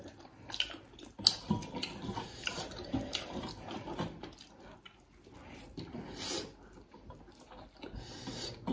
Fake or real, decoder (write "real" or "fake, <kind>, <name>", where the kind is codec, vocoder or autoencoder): real